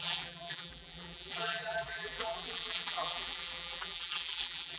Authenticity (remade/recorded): remade